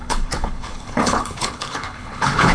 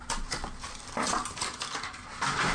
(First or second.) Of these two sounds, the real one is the second